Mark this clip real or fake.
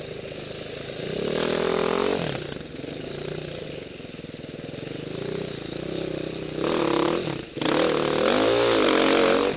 real